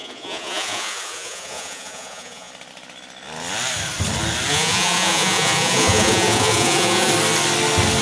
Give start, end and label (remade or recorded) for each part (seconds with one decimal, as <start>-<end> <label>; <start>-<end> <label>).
0.0-2.5 remade; 2.5-4.5 recorded; 4.5-7.1 remade; 7.1-8.0 recorded